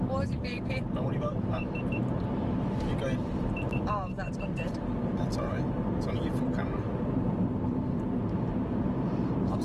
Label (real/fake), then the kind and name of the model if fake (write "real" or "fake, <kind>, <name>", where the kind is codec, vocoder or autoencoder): fake, vocoder, BigVGAN v2